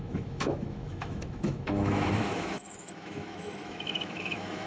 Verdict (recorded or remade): remade